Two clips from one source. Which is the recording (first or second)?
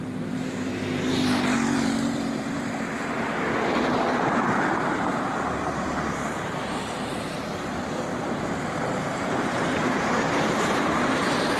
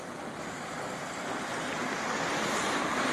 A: second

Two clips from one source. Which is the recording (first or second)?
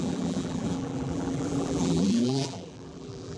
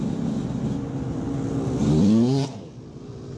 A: second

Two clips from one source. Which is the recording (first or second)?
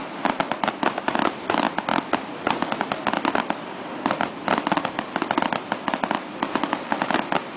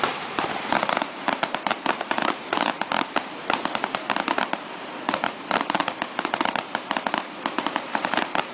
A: first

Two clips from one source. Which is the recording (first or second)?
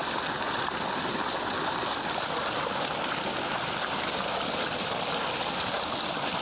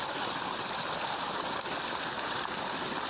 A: first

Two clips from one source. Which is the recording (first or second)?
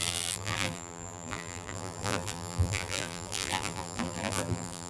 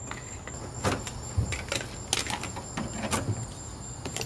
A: second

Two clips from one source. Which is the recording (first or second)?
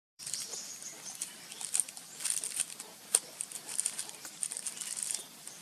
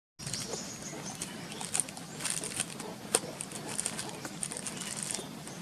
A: second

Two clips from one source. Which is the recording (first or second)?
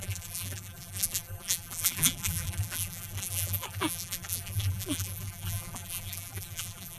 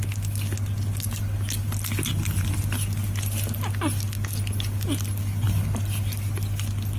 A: second